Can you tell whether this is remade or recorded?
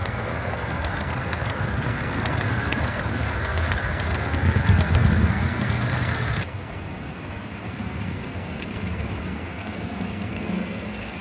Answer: remade